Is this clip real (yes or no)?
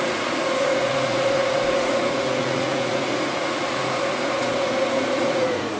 no